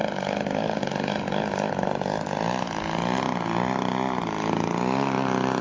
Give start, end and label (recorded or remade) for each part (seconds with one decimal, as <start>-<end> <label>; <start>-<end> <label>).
0.0-5.6 recorded